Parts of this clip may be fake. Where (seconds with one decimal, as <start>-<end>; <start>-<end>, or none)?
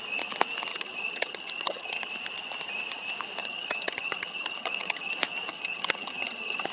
0.7-2.1; 3.4-5.1; 5.5-6.7